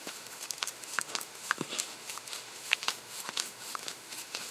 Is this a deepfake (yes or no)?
yes